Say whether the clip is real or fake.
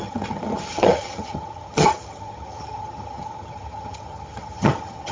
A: fake